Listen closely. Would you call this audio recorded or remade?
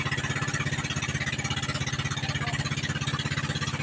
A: recorded